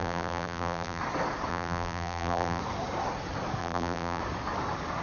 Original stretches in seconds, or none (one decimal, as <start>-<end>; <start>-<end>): 1.0-1.5; 2.6-3.6; 4.2-5.0